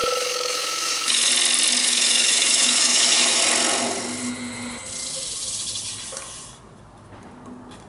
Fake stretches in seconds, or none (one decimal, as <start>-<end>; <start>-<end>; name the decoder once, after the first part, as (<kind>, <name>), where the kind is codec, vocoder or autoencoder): 0.0-1.3 (autoencoder, DAC-VAE); 1.8-3.4